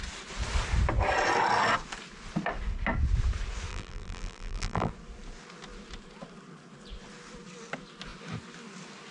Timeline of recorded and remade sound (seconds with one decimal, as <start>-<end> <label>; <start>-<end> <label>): 0.0-3.7 recorded; 3.7-4.9 remade; 4.9-9.1 recorded